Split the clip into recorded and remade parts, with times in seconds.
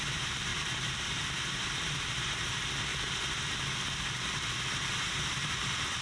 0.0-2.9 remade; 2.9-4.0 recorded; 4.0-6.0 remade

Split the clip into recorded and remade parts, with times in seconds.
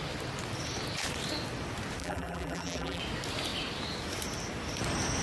0.0-2.0 recorded; 2.0-3.0 remade; 3.0-5.2 recorded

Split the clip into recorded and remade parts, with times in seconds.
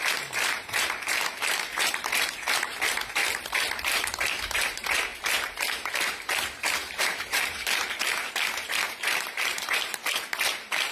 0.0-3.2 remade; 3.2-3.8 recorded; 3.8-10.9 remade